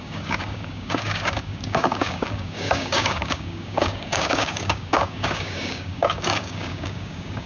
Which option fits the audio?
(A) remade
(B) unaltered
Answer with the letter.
A